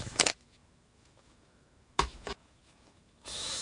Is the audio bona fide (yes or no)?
no